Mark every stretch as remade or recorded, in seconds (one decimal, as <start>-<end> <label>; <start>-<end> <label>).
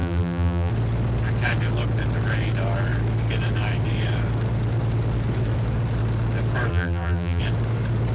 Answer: 0.0-0.7 remade; 0.7-6.7 recorded; 6.7-7.4 remade; 7.4-8.1 recorded